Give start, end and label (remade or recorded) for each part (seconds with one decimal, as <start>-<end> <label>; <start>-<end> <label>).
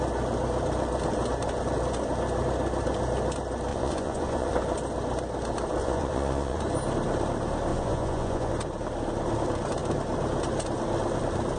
0.0-3.7 recorded; 3.7-4.5 remade; 4.5-5.8 recorded; 5.8-6.6 remade; 6.6-7.7 recorded; 7.7-8.5 remade; 8.5-11.6 recorded